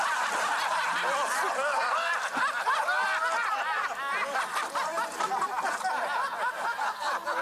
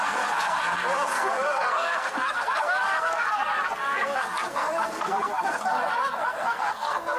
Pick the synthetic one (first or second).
second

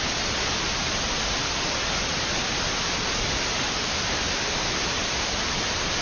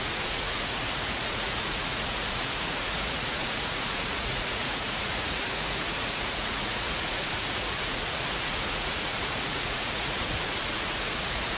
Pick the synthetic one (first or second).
second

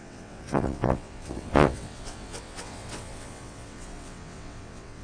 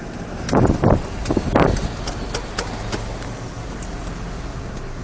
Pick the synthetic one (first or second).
first